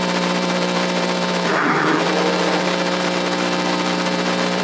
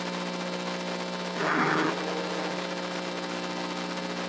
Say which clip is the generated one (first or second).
first